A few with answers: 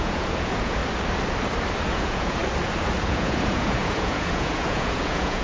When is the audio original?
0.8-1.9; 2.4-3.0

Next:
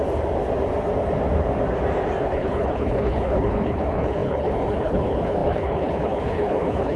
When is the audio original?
0.0-2.2